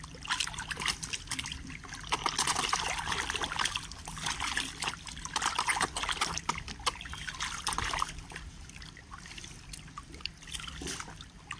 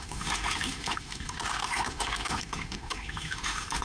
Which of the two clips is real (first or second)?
first